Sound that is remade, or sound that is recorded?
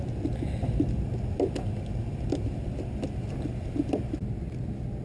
recorded